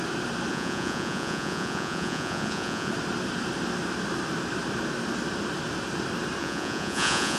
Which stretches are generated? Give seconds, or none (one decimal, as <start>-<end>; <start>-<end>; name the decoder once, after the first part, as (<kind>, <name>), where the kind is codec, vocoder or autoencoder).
0.5-2.9 (vocoder, Vocos); 6.4-7.4